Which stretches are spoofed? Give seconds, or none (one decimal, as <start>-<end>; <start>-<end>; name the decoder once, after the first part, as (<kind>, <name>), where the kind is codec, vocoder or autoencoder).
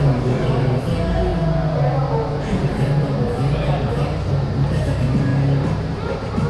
none